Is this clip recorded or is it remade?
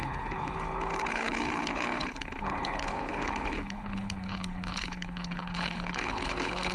remade